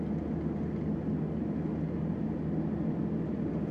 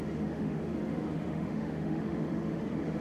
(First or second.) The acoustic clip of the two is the first